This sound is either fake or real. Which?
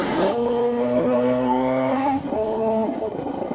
fake